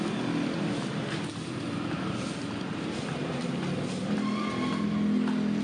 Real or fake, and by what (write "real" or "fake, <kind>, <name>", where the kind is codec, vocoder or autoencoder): real